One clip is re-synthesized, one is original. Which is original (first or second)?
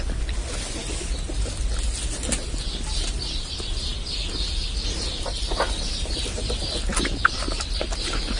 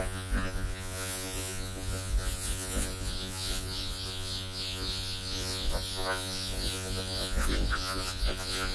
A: first